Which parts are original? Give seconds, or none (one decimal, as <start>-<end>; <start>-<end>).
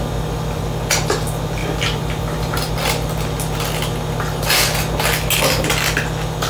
0.0-1.6; 2.7-6.5